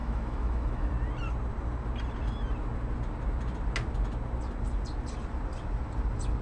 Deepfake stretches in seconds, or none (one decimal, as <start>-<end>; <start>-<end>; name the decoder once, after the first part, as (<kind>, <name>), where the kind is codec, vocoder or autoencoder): 0.0-0.9 (autoencoder, DAC-VAE)